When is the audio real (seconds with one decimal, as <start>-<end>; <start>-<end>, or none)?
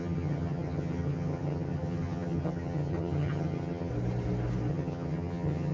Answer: 3.9-4.7